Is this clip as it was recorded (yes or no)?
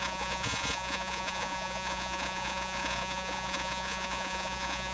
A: no